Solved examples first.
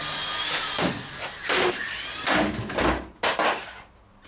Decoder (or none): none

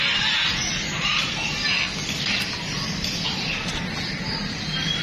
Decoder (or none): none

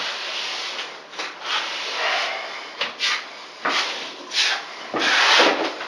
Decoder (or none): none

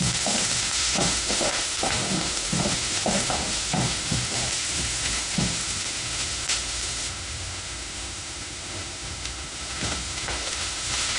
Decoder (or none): autoencoder, DAC-VAE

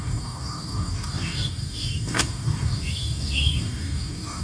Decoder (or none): codec, DAC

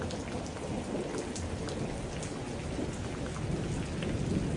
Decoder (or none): none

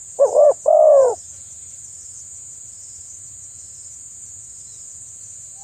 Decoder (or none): vocoder, Vocos